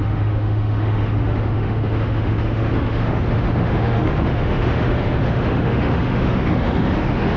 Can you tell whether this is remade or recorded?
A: remade